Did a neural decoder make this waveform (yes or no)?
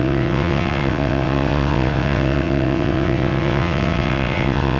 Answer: yes